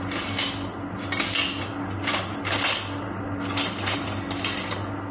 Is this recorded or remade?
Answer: recorded